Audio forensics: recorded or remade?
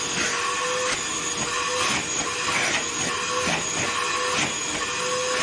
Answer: recorded